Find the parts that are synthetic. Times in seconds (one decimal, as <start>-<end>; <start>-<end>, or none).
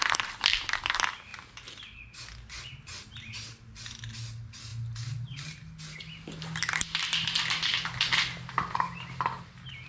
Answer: none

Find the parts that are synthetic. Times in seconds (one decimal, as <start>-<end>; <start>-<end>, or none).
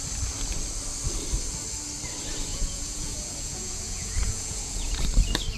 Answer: 2.5-5.0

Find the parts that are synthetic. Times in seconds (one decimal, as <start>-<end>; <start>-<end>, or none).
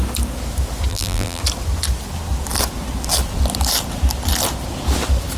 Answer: 0.9-1.4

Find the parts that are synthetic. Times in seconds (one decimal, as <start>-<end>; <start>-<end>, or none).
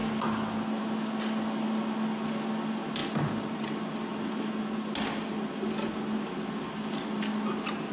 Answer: none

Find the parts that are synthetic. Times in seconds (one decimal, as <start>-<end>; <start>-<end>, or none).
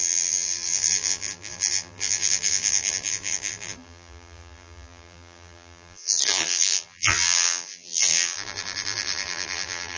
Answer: 0.0-10.0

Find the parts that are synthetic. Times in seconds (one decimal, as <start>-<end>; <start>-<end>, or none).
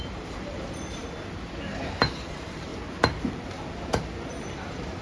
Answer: 0.0-1.0; 2.0-2.7; 4.5-5.0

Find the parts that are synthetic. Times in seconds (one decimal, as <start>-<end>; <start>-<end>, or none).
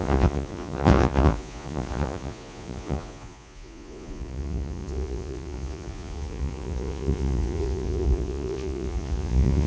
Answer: 0.0-9.7